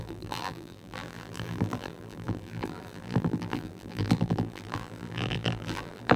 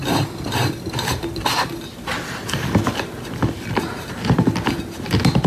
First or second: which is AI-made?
first